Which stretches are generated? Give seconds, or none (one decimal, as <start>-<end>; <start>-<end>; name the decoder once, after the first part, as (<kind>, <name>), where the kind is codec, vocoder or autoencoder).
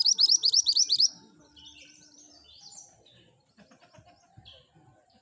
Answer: 0.4-3.5 (vocoder, BigVGAN v2)